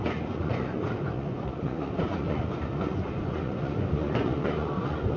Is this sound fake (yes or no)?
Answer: yes